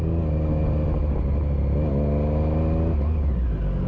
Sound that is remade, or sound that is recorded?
recorded